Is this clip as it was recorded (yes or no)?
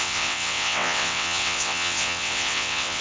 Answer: no